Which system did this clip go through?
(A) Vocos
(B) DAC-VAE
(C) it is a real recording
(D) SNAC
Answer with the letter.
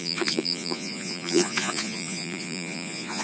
A